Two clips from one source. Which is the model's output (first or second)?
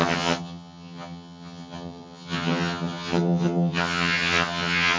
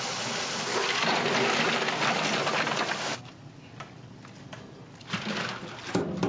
first